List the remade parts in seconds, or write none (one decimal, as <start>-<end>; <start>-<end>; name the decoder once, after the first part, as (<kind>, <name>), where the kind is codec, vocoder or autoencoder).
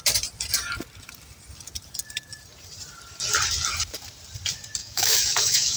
4.8-5.8 (autoencoder, DAC-VAE)